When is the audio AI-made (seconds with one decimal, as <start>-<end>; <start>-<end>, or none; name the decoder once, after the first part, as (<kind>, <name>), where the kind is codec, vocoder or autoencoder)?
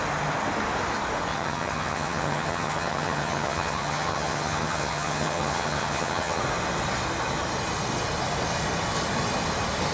1.3-6.4 (vocoder, HiFi-GAN)